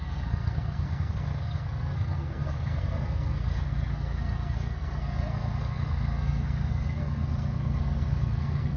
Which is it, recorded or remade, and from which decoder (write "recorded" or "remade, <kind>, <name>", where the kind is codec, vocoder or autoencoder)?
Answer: remade, codec, SNAC